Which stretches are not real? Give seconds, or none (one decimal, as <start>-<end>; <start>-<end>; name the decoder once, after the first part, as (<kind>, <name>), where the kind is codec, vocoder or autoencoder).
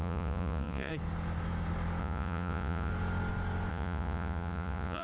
0.0-0.9 (vocoder, Vocos); 2.0-2.9; 3.7-5.0